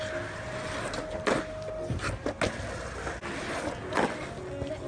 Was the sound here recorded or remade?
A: recorded